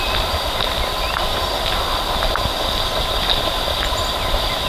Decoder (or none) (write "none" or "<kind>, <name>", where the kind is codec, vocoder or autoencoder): none